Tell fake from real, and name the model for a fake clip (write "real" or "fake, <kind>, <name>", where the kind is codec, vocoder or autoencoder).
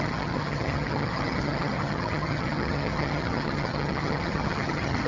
fake, vocoder, HiFi-GAN